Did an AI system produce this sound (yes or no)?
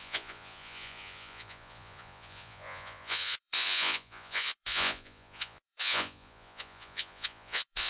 yes